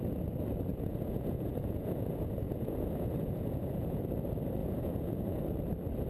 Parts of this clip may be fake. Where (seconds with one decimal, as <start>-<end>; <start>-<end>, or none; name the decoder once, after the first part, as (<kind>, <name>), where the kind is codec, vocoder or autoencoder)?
0.7-4.0 (vocoder, Vocos); 4.6-5.4